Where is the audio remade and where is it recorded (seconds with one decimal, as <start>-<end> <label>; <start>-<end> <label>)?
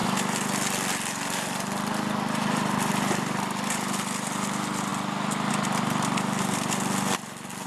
0.0-7.7 recorded